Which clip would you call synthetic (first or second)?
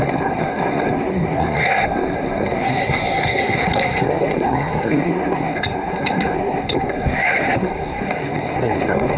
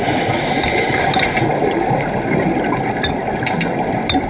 first